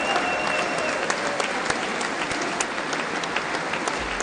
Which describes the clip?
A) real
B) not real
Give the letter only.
A